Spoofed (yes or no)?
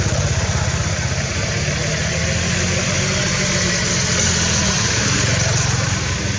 no